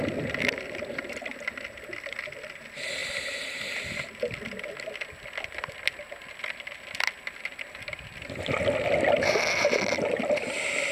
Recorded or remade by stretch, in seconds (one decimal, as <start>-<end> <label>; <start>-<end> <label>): 0.0-10.9 recorded